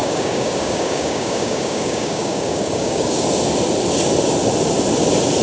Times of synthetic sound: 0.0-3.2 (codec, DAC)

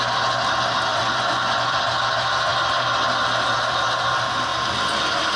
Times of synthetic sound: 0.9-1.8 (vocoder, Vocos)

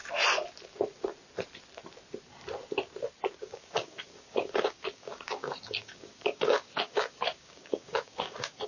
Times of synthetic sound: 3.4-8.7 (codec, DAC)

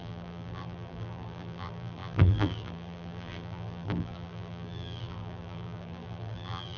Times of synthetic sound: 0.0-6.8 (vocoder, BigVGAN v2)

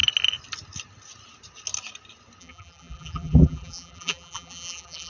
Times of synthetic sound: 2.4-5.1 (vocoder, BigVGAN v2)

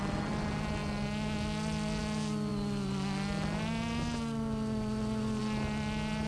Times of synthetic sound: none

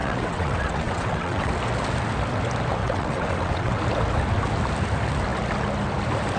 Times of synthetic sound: 0.0-1.5 (vocoder, WaveNeXt); 2.8-3.8

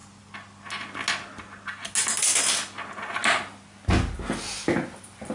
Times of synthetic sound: none